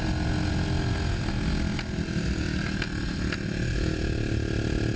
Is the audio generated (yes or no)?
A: no